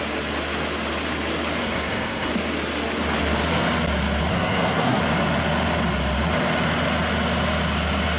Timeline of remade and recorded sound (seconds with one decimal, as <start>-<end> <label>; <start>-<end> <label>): 0.0-1.6 recorded; 1.6-2.3 remade; 2.3-4.3 recorded; 4.3-5.0 remade; 5.0-8.2 recorded